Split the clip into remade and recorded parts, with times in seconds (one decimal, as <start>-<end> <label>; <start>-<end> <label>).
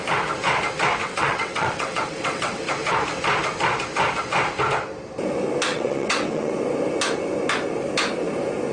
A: 0.0-1.0 recorded; 1.0-2.6 remade; 2.6-5.7 recorded; 5.7-6.5 remade; 6.5-8.7 recorded